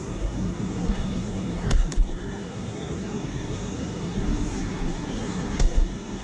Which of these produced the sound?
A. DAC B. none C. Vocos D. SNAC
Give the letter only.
D